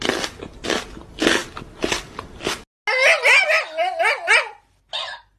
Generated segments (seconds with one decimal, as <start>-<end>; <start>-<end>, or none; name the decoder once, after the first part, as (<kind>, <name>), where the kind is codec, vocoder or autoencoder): none